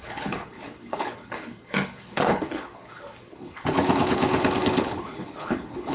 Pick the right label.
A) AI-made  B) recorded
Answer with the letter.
A